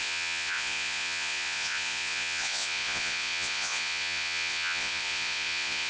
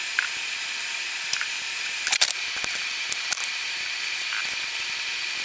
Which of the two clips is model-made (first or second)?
first